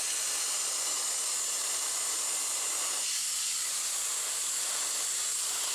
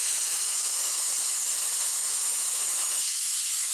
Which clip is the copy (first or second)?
second